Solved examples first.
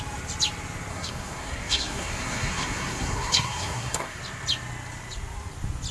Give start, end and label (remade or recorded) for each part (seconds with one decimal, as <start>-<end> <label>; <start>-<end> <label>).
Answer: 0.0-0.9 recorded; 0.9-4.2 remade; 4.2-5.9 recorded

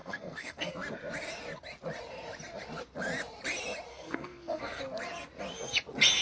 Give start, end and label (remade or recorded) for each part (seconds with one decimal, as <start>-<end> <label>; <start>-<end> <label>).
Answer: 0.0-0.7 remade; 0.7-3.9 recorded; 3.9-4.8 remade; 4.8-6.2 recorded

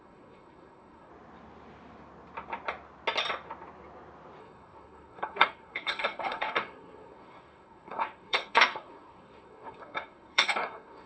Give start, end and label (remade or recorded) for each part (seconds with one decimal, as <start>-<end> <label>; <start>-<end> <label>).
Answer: 0.0-1.1 remade; 1.1-4.4 recorded; 4.4-11.1 remade

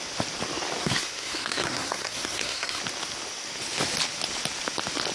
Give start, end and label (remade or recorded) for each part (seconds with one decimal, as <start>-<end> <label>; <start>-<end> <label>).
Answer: 0.0-0.8 recorded; 0.8-2.8 remade; 2.8-5.1 recorded

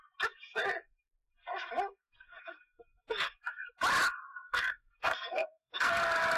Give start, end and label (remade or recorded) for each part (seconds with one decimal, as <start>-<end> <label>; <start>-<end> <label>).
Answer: 0.0-2.0 recorded; 2.0-3.3 remade; 3.3-4.2 recorded; 4.2-6.0 remade; 6.0-6.4 recorded